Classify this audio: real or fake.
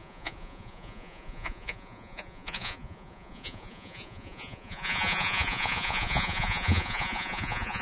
fake